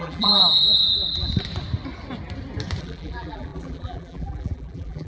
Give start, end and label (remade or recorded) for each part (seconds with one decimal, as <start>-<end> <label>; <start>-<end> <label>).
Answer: 0.0-0.4 remade; 0.4-2.8 recorded; 2.8-5.1 remade